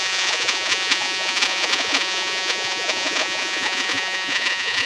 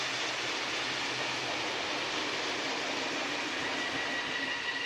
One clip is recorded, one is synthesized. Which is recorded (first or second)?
second